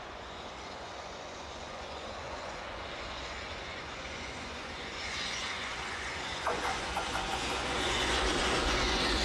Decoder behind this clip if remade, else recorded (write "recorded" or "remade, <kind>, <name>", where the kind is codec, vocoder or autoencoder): remade, vocoder, Vocos